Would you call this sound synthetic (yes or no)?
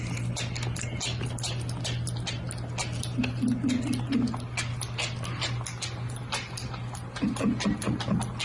no